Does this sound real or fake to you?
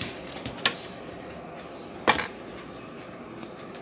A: real